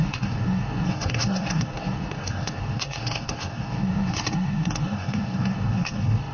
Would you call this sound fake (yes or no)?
yes